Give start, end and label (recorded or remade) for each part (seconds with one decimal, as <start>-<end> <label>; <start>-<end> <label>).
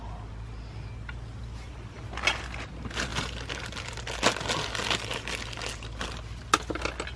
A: 0.0-7.2 recorded